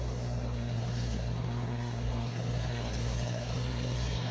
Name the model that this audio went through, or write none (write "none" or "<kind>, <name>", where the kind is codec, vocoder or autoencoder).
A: codec, SNAC